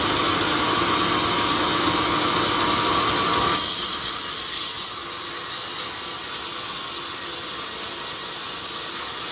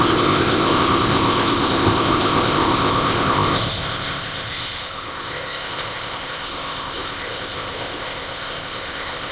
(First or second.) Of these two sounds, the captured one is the first